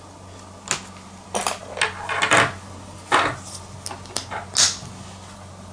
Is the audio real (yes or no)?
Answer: yes